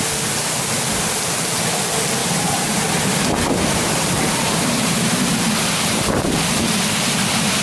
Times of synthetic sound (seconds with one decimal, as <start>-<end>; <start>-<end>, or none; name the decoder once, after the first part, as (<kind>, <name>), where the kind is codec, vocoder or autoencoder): 2.2-6.8 (vocoder, BigVGAN v2)